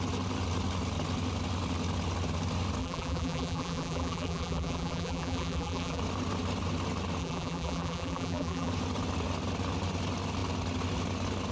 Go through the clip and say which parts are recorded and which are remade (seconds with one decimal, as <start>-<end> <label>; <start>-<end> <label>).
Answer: 0.0-2.8 recorded; 2.8-6.0 remade; 6.0-7.2 recorded; 7.2-8.7 remade; 8.7-11.5 recorded